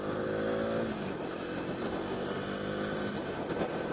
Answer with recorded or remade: recorded